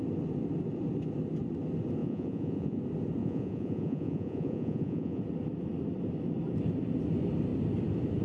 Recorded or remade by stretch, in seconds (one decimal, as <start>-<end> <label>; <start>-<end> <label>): 0.0-2.0 recorded; 2.0-2.8 remade; 2.8-3.2 recorded; 3.2-5.2 remade; 5.2-8.2 recorded